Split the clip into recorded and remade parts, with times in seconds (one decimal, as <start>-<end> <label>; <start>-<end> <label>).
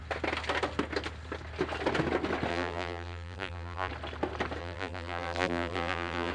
0.0-2.5 recorded; 2.5-3.9 remade; 3.9-4.6 recorded; 4.6-6.3 remade